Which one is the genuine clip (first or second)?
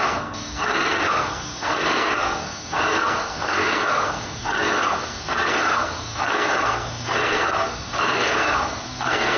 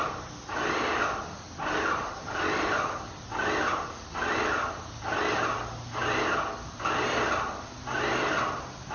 second